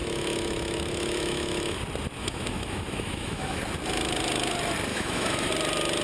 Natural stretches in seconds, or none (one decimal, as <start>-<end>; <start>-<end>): 1.8-2.2; 3.6-4.9; 5.5-6.0